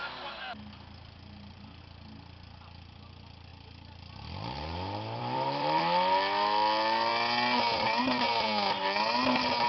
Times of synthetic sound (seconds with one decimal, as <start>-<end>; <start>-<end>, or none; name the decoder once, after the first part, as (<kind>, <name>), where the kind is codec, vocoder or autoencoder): 3.5-5.8 (vocoder, BigVGAN v2)